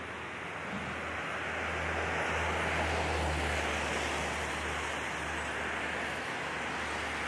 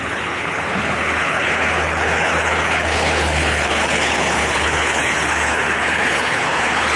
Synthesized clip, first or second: second